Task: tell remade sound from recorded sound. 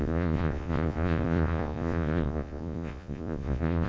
remade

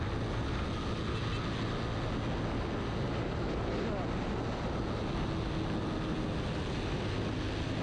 recorded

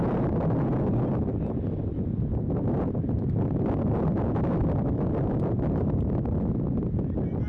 recorded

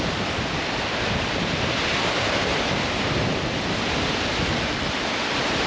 recorded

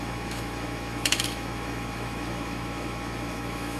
remade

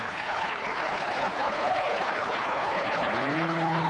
remade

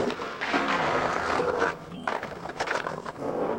remade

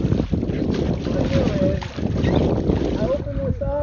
recorded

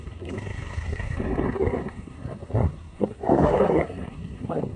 remade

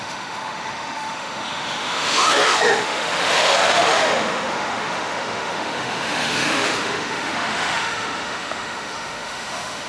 remade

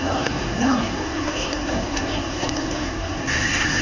remade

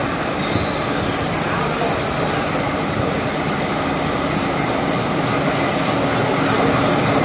recorded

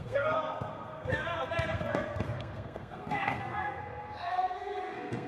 remade